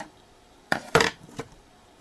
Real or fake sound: fake